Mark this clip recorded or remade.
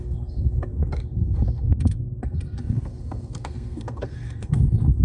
remade